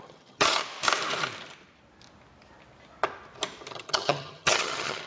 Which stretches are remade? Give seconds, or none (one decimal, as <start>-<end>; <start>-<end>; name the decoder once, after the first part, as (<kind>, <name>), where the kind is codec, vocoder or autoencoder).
0.0-0.6 (vocoder, HiFi-GAN); 3.7-5.1